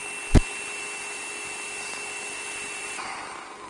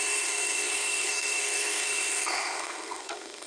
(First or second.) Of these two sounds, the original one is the first